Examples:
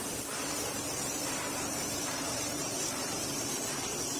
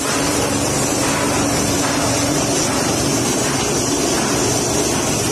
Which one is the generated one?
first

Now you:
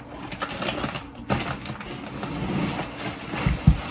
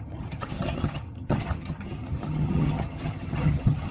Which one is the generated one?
second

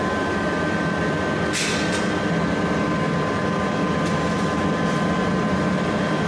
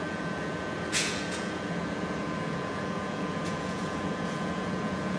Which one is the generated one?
second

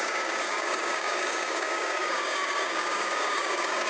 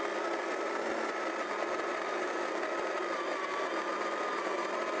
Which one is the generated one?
first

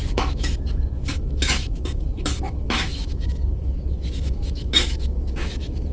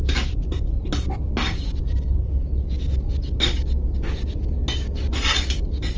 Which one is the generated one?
first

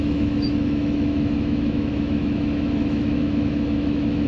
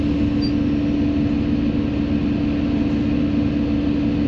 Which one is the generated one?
first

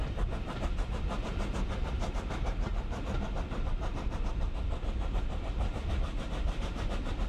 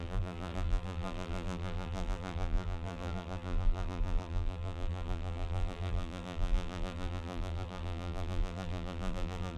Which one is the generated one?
second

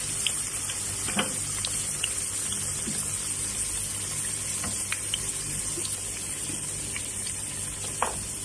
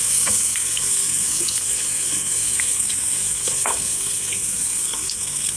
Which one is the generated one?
second